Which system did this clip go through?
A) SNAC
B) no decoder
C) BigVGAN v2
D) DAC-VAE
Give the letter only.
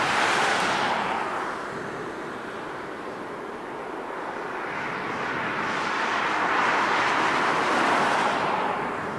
B